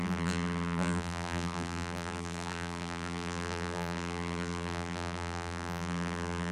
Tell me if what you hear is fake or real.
fake